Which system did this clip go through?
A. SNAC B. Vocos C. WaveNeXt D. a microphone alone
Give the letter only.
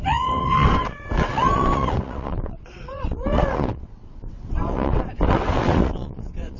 C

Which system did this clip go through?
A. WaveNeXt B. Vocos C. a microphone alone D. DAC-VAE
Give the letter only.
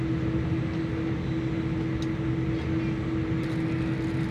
C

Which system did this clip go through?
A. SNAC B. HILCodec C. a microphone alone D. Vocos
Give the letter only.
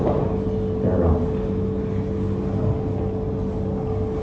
C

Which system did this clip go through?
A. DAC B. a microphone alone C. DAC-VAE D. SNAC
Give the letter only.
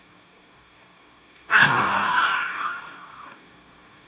A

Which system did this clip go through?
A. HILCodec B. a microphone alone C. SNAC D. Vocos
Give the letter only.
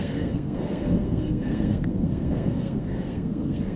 C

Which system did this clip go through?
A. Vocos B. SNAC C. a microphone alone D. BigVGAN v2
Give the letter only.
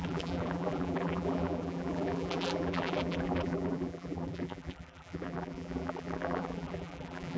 D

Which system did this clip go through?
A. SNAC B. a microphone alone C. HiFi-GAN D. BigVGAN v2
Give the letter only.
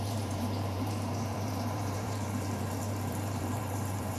D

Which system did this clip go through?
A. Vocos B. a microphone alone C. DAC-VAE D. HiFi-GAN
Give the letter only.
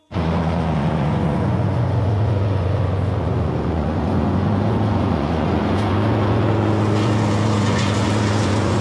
A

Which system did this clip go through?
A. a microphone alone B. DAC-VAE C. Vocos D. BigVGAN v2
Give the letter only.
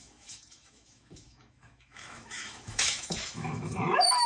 B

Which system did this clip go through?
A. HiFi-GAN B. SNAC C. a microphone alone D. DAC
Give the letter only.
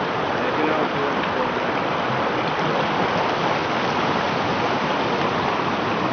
C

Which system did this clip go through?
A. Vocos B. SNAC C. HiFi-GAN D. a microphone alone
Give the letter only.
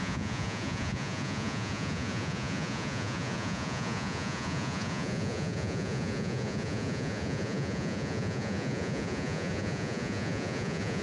A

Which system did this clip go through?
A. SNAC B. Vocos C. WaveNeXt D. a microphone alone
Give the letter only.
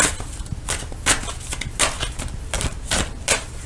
D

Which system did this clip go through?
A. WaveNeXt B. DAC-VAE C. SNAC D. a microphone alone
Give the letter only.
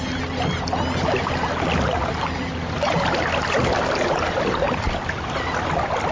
D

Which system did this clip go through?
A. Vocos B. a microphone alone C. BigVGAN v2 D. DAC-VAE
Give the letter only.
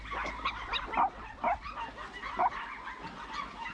B